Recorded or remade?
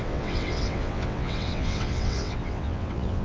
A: remade